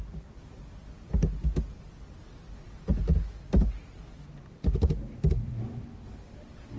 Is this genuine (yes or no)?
yes